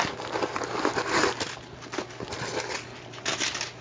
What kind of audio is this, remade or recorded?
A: recorded